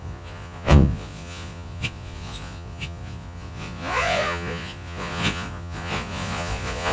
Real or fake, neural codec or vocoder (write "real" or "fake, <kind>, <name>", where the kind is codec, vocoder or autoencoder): fake, vocoder, Vocos